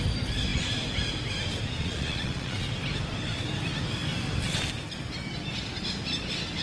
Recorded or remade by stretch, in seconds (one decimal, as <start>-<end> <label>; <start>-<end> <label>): 0.0-1.8 recorded; 1.8-2.7 remade; 2.7-6.6 recorded